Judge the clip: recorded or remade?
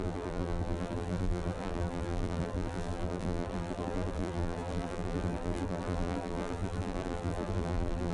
remade